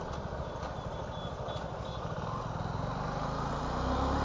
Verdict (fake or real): real